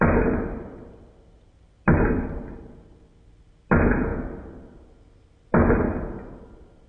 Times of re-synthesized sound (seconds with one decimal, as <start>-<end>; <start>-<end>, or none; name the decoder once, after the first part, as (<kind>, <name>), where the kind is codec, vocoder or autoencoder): none